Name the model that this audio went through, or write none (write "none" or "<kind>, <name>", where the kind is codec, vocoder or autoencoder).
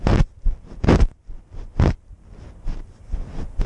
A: vocoder, BigVGAN v2